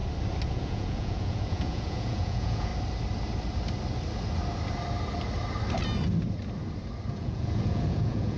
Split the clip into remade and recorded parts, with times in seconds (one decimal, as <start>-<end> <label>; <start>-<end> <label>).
0.0-0.5 recorded; 0.5-2.7 remade; 2.7-7.1 recorded; 7.1-8.4 remade